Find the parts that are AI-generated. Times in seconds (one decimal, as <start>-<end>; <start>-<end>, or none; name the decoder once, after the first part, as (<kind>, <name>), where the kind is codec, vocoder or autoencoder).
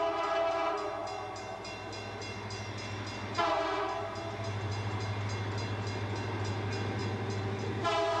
none